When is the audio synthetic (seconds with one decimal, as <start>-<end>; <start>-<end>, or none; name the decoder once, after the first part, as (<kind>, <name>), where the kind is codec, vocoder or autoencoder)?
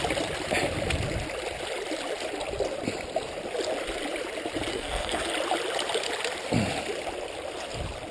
4.7-5.3 (codec, SNAC)